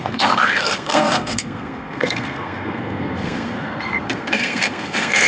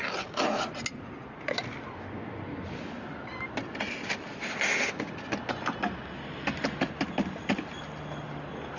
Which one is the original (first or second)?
second